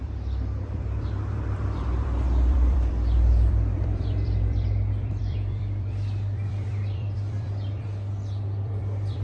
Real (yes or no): no